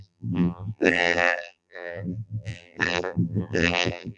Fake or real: fake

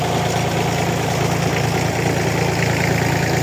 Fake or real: real